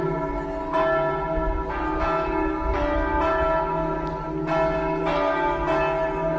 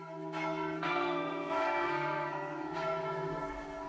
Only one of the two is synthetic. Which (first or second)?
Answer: second